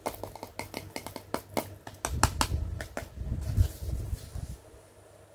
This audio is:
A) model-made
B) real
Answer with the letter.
B